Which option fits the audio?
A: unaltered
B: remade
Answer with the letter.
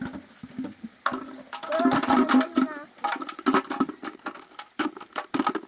A